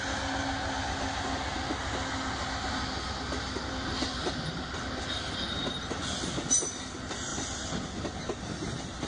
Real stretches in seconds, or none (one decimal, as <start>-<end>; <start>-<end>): 0.0-9.1